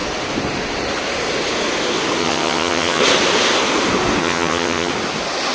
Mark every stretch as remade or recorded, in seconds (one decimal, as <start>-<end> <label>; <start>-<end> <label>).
0.0-2.2 recorded; 2.2-3.0 remade; 3.0-4.2 recorded; 4.2-4.9 remade; 4.9-5.5 recorded